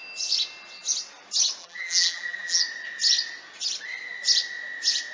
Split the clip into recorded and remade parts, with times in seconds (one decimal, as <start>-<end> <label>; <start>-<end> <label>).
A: 0.0-1.6 recorded; 1.6-2.6 remade; 2.6-5.1 recorded